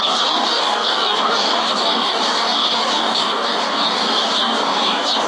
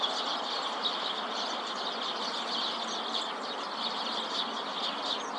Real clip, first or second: second